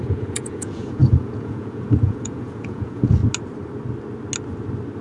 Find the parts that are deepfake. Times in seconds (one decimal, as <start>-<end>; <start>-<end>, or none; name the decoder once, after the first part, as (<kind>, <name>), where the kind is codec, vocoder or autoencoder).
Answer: 0.0-3.2 (vocoder, Vocos)